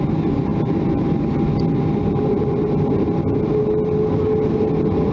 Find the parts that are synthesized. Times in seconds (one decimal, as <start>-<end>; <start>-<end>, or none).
none